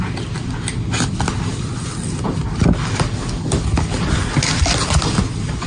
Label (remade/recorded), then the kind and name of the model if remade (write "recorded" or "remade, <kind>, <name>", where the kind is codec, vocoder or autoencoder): recorded